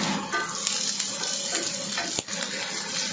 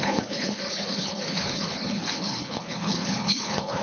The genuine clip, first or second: first